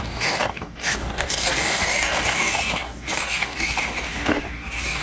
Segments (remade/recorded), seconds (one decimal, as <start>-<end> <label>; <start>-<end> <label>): 0.0-5.0 remade